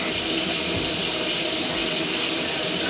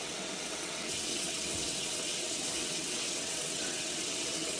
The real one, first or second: first